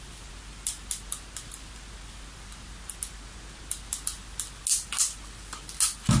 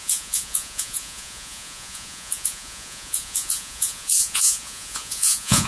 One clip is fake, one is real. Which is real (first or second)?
first